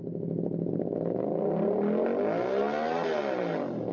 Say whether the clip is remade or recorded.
recorded